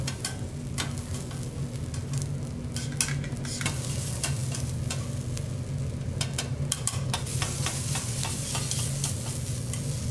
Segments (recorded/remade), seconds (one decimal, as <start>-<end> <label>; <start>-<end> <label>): 0.0-10.1 recorded

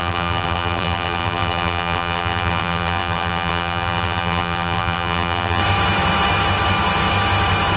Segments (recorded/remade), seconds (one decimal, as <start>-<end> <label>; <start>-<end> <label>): 0.0-5.6 remade; 5.6-7.8 recorded

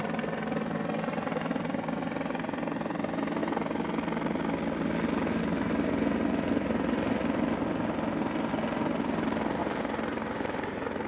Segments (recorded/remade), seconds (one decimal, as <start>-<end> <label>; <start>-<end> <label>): 0.0-9.6 recorded; 9.6-11.1 remade